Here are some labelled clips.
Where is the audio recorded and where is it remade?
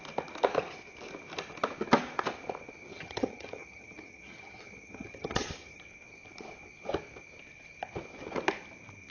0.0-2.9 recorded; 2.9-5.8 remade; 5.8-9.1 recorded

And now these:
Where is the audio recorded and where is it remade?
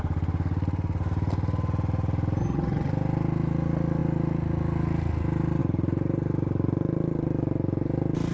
0.0-2.4 recorded; 2.4-2.9 remade; 2.9-8.3 recorded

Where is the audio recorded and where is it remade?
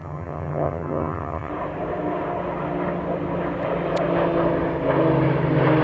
0.0-1.5 remade; 1.5-5.8 recorded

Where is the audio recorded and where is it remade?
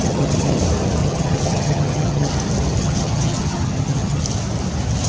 0.0-0.6 remade; 0.6-1.0 recorded; 1.0-2.3 remade; 2.3-2.8 recorded; 2.8-4.2 remade; 4.2-5.1 recorded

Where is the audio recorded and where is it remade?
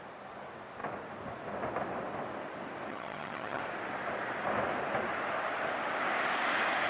0.0-2.9 recorded; 2.9-3.6 remade; 3.6-6.9 recorded